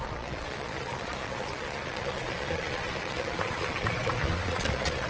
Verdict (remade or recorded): remade